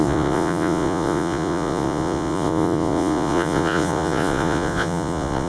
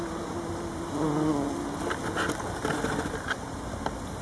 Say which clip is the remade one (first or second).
first